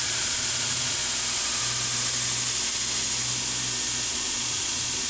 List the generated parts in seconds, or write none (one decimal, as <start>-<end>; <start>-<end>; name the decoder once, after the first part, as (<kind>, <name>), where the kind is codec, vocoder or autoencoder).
0.0-1.0 (vocoder, Vocos); 4.1-5.1